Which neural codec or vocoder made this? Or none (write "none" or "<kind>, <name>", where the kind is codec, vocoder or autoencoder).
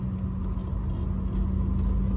none